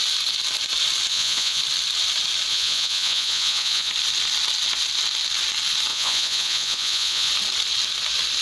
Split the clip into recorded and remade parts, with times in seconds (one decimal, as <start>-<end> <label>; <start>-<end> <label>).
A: 0.0-1.1 recorded; 1.1-1.6 remade; 1.6-2.5 recorded; 2.5-3.9 remade; 3.9-5.9 recorded; 5.9-7.3 remade; 7.3-8.4 recorded